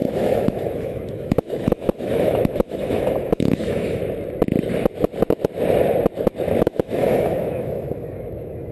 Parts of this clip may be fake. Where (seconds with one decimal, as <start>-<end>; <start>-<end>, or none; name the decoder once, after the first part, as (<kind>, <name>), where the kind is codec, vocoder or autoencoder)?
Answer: 0.0-4.0 (autoencoder, DAC-VAE); 6.6-8.7